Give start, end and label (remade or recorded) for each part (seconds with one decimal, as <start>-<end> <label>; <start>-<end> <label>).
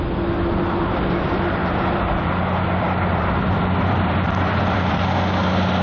0.0-1.6 recorded; 1.6-4.9 remade; 4.9-5.8 recorded